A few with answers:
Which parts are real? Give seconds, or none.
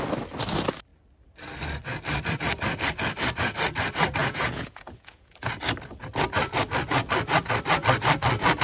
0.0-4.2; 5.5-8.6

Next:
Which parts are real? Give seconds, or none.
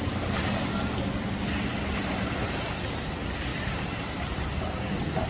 0.0-1.7; 2.8-3.5; 4.8-5.3